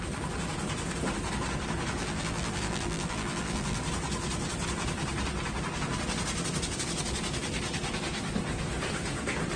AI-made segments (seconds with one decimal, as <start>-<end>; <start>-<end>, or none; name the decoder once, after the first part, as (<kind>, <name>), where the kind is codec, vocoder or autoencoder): 2.0-3.8 (vocoder, BigVGAN v2)